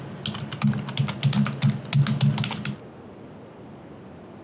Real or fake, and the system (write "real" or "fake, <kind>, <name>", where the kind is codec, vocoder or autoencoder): real